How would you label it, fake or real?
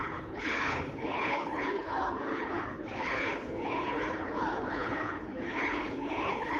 fake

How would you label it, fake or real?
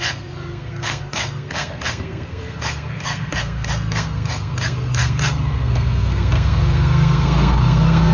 fake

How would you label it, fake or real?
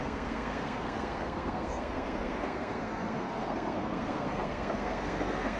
fake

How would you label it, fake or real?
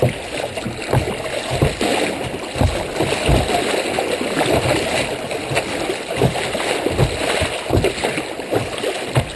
real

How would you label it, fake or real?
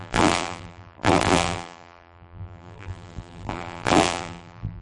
fake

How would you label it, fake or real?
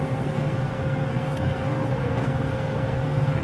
fake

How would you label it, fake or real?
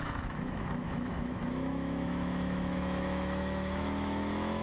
fake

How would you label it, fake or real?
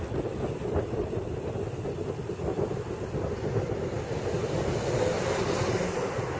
real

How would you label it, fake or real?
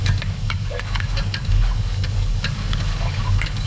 fake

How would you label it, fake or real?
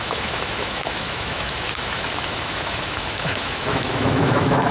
fake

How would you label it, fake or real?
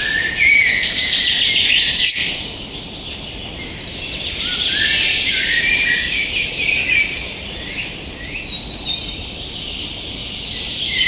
real